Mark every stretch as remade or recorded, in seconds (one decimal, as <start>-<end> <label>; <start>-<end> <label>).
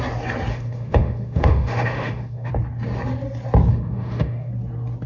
0.0-0.5 recorded; 0.5-2.5 remade; 2.5-3.7 recorded; 3.7-4.5 remade; 4.5-5.1 recorded